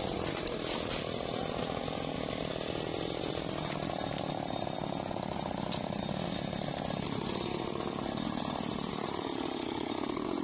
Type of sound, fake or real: real